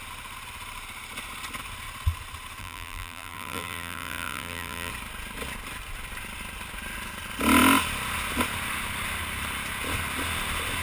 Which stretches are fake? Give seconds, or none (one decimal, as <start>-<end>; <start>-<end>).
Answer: 2.6-4.9